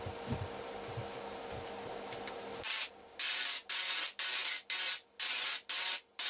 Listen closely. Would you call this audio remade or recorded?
recorded